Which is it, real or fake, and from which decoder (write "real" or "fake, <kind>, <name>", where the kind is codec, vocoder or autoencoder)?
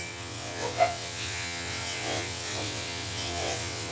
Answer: fake, vocoder, WaveNeXt